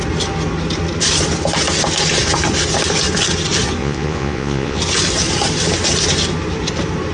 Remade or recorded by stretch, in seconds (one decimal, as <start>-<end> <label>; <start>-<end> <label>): 0.0-3.8 recorded; 3.8-4.8 remade; 4.8-7.1 recorded